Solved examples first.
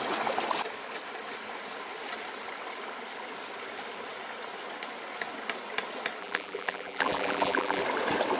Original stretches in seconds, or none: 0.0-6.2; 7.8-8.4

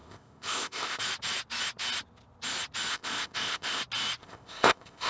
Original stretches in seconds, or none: 1.0-2.9; 3.8-4.2

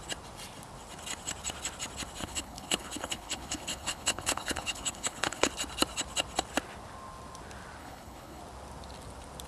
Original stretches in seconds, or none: 0.0-2.2; 5.5-7.8; 8.4-9.5

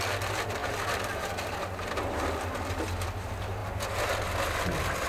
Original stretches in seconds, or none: 0.0-5.1

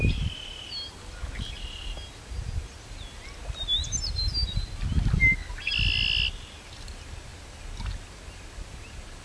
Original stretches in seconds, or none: 0.0-9.2

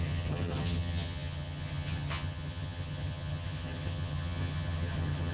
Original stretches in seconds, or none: none

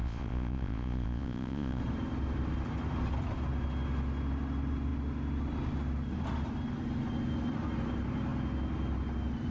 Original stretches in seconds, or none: 1.8-9.5